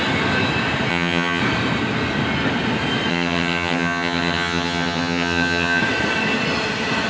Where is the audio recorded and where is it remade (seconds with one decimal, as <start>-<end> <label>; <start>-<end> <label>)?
0.0-0.9 recorded; 0.9-1.4 remade; 1.4-3.1 recorded; 3.1-5.8 remade; 5.8-7.1 recorded